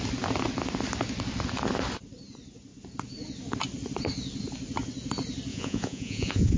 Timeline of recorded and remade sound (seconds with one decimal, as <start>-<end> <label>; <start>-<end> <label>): 0.0-5.5 recorded; 5.5-6.6 remade